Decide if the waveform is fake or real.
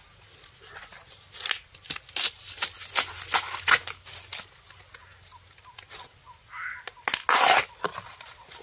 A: real